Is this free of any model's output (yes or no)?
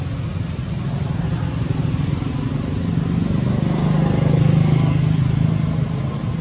yes